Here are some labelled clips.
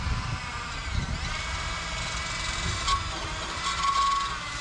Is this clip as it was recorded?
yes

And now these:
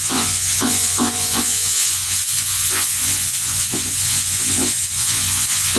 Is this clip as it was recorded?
no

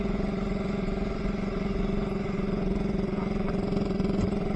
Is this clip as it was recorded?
no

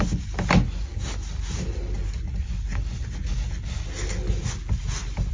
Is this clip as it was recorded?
yes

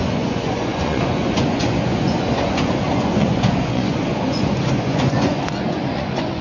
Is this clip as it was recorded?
no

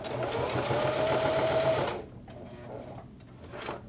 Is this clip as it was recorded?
yes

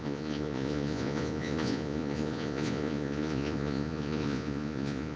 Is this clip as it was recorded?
no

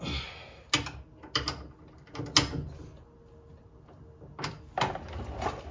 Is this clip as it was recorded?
yes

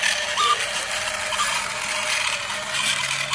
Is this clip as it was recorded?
yes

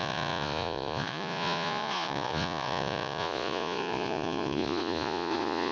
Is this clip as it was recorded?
no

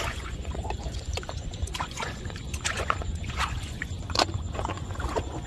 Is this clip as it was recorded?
no